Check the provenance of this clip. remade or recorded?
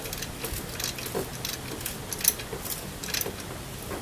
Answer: recorded